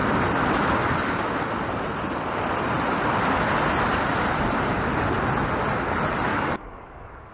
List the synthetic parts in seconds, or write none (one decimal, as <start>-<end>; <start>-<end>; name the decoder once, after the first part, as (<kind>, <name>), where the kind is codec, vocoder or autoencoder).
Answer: 6.3-7.3 (codec, DAC)